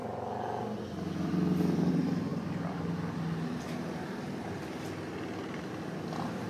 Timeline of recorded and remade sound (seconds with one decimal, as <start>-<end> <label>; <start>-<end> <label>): 0.0-6.5 recorded